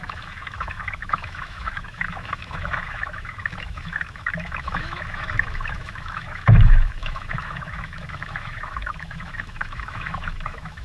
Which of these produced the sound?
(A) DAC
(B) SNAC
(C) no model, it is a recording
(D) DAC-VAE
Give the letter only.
D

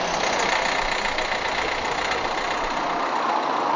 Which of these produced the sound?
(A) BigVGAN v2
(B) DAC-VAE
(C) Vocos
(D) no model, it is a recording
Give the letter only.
D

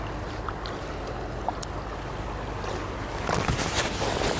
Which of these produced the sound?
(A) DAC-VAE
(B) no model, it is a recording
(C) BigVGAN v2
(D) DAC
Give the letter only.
B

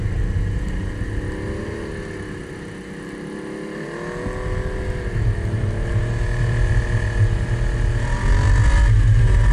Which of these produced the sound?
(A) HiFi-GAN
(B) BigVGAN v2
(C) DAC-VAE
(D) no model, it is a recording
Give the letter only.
D